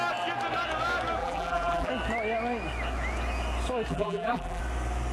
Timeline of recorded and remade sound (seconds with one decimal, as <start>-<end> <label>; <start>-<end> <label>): 0.0-1.2 recorded; 1.2-1.9 remade; 1.9-3.9 recorded; 3.9-4.6 remade; 4.6-5.1 recorded